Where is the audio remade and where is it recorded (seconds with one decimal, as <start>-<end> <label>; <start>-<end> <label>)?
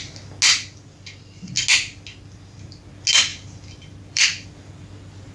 0.0-3.3 recorded; 3.3-4.8 remade; 4.8-5.3 recorded